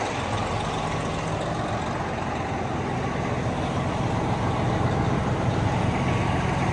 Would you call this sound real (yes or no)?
yes